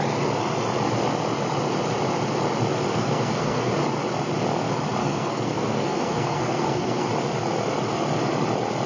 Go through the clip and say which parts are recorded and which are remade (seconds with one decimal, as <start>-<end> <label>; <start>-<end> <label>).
0.0-2.9 recorded; 2.9-3.7 remade; 3.7-5.0 recorded; 5.0-7.1 remade; 7.1-8.9 recorded